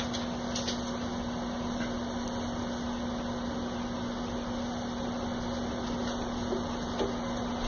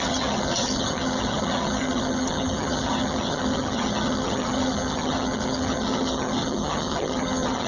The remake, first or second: second